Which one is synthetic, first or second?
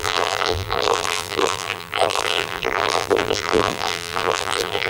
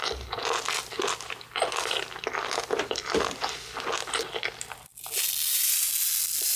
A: first